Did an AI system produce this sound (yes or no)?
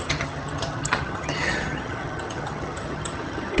yes